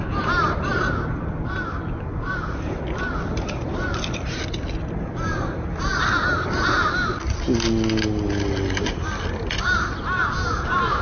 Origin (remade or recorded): recorded